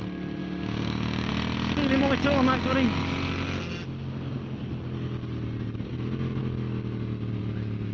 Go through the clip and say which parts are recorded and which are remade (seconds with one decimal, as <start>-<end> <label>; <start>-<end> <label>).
0.0-0.4 recorded; 0.4-1.3 remade; 1.3-7.9 recorded

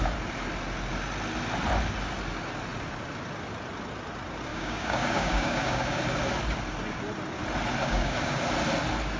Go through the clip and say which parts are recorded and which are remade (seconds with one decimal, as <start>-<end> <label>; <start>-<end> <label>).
0.0-4.5 recorded; 4.5-6.0 remade; 6.0-7.8 recorded; 7.8-8.4 remade; 8.4-9.2 recorded

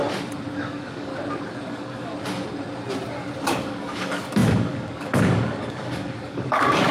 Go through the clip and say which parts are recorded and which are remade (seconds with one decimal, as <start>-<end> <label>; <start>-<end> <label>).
0.0-0.5 recorded; 0.5-1.1 remade; 1.1-1.6 recorded; 1.6-2.1 remade; 2.1-3.4 recorded; 3.4-6.9 remade

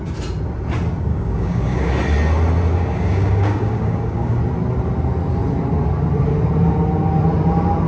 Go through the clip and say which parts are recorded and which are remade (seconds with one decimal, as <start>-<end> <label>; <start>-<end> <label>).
0.0-1.1 recorded; 1.1-2.0 remade; 2.0-2.7 recorded; 2.7-4.4 remade; 4.4-7.9 recorded

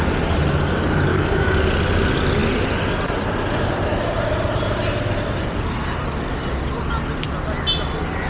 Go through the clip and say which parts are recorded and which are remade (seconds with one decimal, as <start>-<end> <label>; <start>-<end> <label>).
0.0-1.1 recorded; 1.1-1.7 remade; 1.7-8.3 recorded